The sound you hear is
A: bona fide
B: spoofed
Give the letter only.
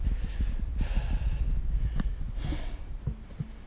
A